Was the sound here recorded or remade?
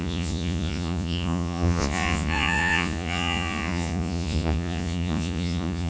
remade